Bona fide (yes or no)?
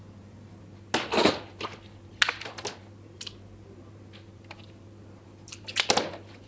yes